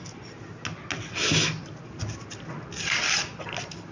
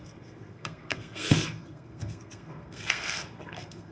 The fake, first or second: second